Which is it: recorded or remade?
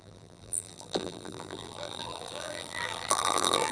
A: remade